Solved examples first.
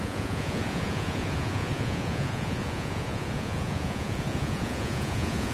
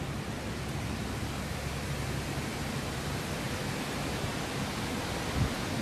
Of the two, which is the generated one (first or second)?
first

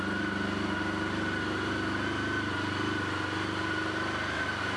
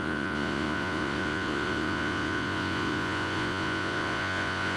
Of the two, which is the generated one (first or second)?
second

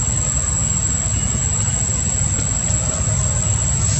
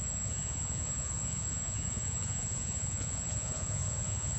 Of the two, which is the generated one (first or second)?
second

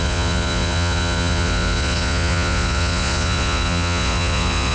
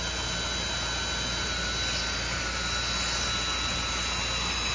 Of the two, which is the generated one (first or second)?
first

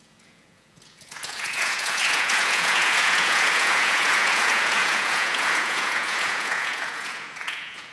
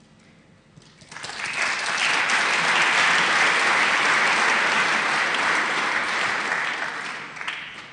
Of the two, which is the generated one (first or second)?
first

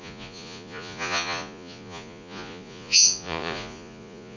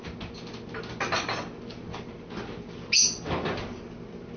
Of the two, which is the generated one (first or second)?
first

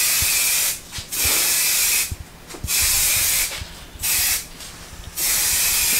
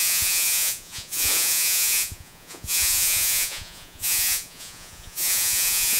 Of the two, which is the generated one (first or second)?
second